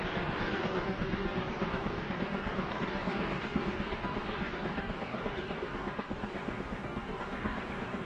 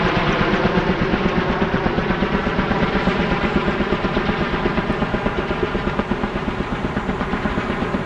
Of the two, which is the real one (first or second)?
second